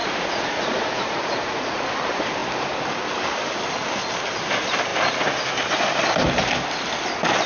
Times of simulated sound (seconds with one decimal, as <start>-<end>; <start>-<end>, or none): 0.0-1.8